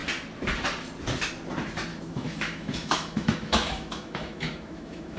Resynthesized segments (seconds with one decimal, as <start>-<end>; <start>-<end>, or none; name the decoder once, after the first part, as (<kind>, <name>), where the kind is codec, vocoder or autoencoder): 1.9-5.2 (autoencoder, DAC-VAE)